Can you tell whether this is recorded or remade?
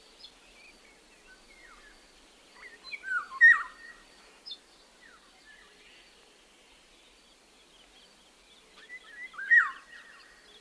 recorded